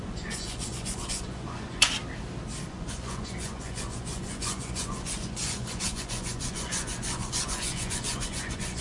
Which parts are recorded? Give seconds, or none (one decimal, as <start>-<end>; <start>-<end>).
2.0-2.7